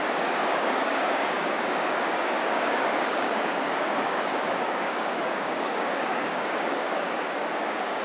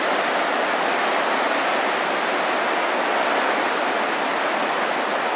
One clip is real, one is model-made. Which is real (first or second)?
second